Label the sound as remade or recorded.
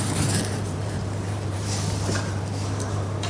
remade